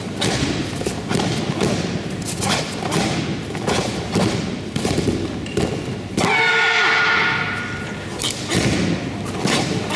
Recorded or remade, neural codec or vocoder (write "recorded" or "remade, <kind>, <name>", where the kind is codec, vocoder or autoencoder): recorded